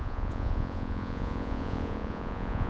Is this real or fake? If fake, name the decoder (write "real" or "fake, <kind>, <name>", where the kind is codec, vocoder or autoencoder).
fake, vocoder, Vocos